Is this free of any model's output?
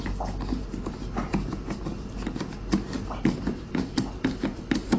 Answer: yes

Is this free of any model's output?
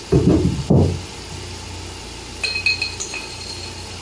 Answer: yes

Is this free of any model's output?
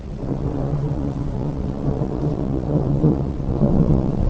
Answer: no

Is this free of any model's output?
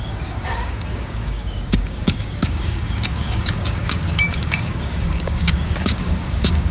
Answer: no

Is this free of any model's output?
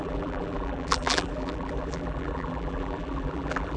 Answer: no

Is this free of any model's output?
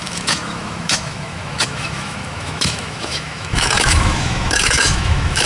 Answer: no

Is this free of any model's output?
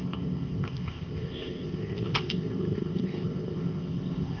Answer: no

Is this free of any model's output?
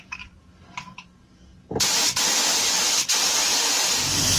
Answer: yes